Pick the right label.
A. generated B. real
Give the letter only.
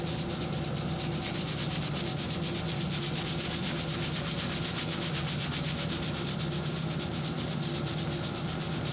B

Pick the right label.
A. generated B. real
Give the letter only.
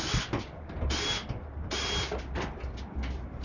B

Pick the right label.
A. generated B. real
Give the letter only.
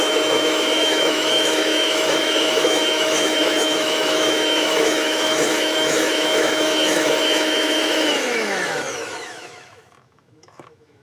A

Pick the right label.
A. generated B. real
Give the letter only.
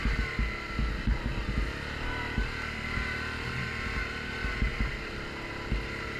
B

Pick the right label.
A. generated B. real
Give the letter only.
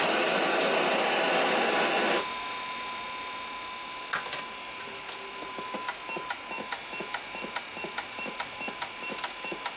B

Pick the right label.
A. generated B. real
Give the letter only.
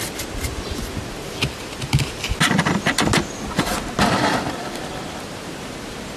B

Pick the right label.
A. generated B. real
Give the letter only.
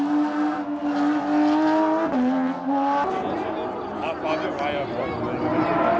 B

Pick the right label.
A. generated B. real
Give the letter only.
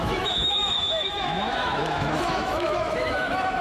A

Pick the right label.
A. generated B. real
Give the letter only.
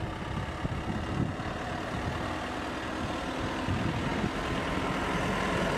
B